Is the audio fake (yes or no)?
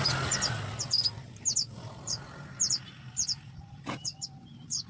no